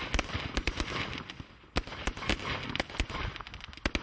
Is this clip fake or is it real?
real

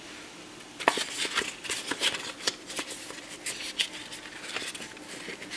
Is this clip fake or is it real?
real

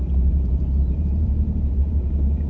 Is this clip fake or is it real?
fake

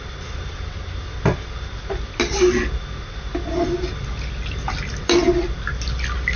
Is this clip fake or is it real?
real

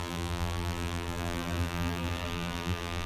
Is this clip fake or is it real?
fake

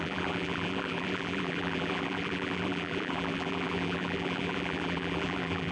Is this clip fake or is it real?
fake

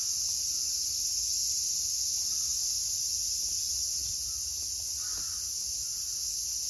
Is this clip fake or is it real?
real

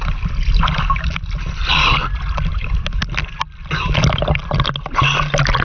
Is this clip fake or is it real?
real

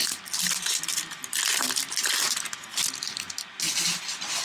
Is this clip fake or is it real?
real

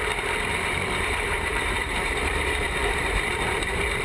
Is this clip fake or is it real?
fake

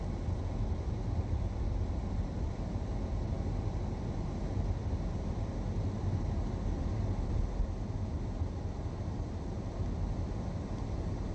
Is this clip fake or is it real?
real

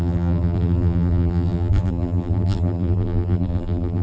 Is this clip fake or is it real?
fake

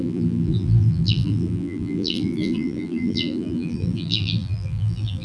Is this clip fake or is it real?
fake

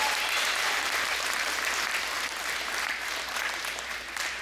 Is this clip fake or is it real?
fake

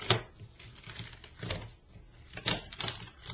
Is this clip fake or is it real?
real